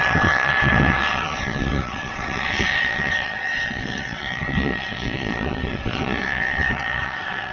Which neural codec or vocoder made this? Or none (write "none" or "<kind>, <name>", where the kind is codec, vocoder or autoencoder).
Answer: vocoder, WaveNeXt